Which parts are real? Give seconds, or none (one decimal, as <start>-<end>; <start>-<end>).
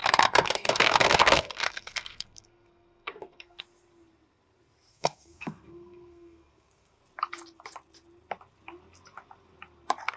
3.6-4.9; 7.0-10.2